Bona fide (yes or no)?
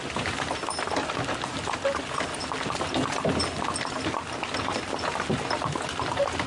yes